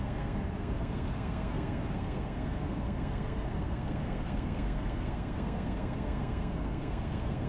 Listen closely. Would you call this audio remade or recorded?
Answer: remade